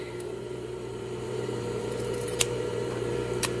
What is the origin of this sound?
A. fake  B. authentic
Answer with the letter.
A